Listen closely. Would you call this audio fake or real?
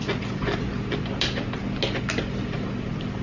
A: real